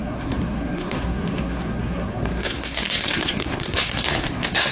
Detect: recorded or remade remade